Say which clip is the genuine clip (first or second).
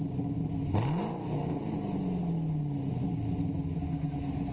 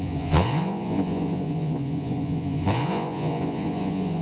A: first